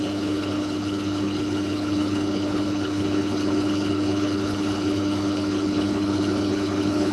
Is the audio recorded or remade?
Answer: remade